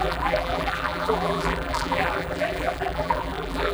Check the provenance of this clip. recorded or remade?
remade